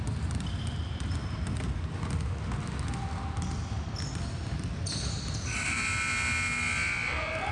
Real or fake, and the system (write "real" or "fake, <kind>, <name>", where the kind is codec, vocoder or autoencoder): real